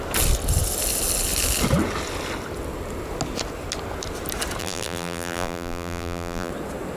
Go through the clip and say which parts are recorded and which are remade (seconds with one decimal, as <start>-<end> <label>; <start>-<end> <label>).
0.0-4.6 recorded; 4.6-6.5 remade; 6.5-7.0 recorded

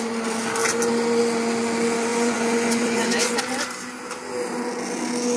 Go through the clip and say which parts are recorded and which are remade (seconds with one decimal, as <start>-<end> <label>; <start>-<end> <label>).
0.0-2.1 recorded; 2.1-3.4 remade; 3.4-5.4 recorded

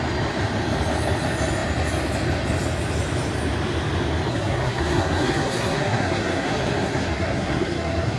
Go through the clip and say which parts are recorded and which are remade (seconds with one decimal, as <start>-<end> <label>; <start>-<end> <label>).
0.0-4.3 recorded; 4.3-8.2 remade